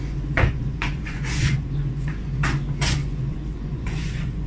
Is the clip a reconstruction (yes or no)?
yes